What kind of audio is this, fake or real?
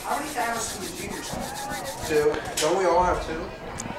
real